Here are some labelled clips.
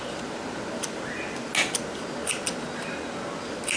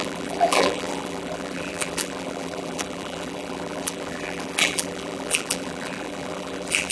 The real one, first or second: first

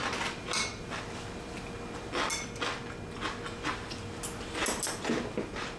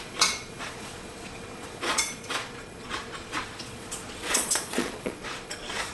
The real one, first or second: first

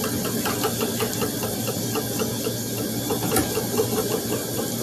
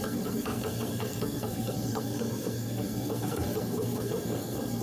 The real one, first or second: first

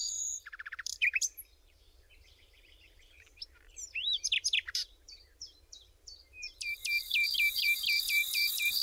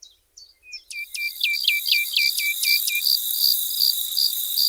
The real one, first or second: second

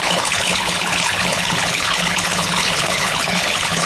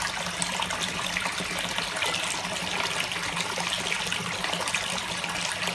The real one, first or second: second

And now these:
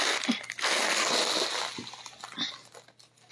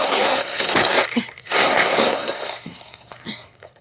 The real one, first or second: first